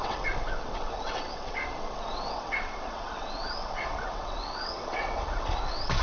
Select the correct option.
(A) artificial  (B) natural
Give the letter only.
A